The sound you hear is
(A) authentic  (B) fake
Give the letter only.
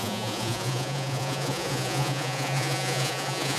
B